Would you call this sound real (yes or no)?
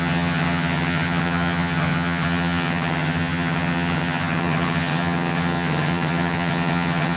no